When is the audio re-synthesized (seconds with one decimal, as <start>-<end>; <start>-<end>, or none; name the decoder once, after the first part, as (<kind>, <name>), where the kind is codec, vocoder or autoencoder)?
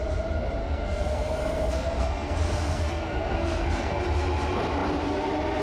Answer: 0.6-4.0 (codec, SNAC)